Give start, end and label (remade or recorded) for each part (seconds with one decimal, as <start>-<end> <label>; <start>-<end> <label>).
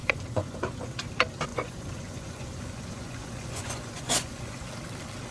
0.0-1.1 remade; 1.1-1.5 recorded; 1.5-4.7 remade; 4.7-5.3 recorded